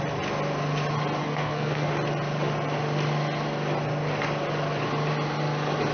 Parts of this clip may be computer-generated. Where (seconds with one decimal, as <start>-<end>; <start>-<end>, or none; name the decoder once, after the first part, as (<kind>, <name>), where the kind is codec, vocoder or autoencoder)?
1.2-1.9 (codec, SNAC)